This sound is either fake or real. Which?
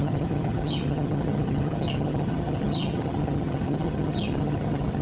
fake